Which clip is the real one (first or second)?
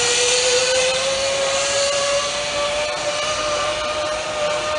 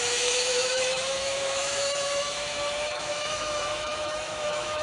first